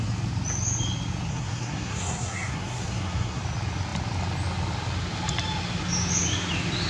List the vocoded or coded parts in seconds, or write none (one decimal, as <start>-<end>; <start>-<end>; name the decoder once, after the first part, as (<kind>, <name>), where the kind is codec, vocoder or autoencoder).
1.3-3.4 (codec, SNAC)